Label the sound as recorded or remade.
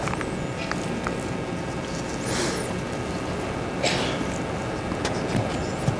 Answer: recorded